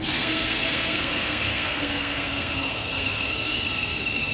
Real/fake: fake